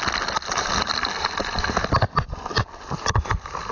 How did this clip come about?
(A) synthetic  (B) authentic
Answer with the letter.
A